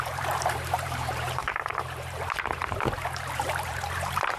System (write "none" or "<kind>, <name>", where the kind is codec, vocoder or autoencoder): vocoder, BigVGAN v2